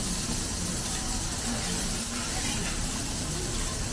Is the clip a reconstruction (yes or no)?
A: no